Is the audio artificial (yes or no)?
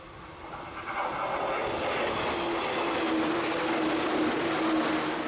no